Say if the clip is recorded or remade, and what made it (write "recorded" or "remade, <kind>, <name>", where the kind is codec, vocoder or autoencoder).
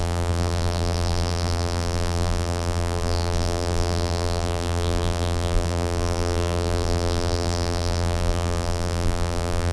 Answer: remade, vocoder, BigVGAN v2